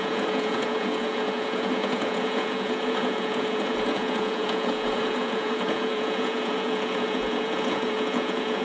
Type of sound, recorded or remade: remade